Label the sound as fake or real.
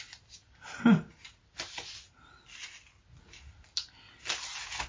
real